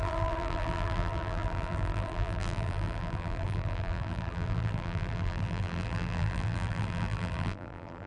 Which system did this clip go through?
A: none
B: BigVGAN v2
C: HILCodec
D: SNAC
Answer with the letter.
B